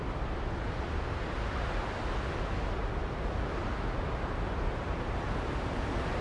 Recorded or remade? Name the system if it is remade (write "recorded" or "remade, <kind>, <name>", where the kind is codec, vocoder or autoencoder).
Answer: recorded